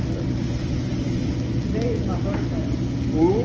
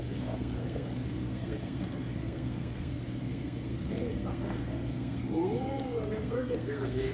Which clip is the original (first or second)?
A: first